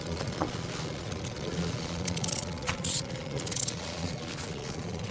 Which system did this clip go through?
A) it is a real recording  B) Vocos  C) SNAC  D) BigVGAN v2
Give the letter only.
B